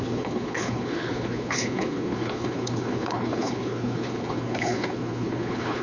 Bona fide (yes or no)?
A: no